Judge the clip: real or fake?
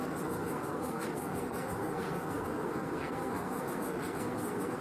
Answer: fake